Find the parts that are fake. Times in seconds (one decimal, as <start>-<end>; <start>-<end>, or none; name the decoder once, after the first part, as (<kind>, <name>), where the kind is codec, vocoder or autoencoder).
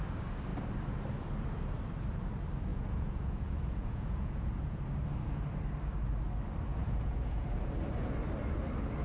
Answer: 2.7-4.8 (vocoder, Vocos); 6.7-7.6